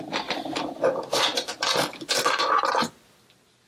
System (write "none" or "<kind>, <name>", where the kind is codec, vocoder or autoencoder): none